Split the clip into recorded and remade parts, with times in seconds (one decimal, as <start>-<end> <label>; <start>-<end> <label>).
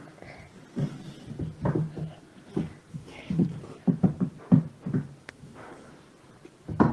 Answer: 0.0-2.9 recorded; 2.9-3.6 remade; 3.6-5.2 recorded; 5.2-5.9 remade; 5.9-6.9 recorded